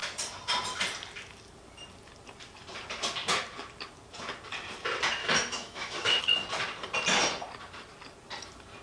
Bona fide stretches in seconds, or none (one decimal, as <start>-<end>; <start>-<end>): 0.0-5.2; 6.2-8.8